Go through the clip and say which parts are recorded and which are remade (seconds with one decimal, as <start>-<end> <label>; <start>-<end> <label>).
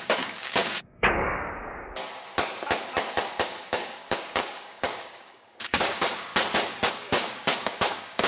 0.0-2.0 remade; 2.0-3.3 recorded; 3.3-6.3 remade; 6.3-6.9 recorded; 6.9-8.3 remade